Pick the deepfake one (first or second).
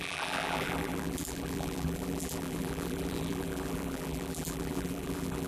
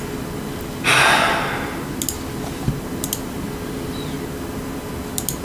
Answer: first